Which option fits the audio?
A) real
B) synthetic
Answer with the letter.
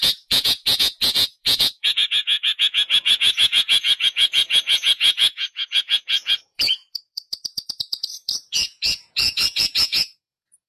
B